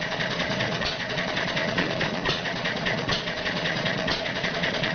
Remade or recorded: remade